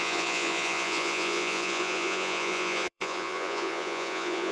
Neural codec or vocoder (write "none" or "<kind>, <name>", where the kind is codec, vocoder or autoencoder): vocoder, Vocos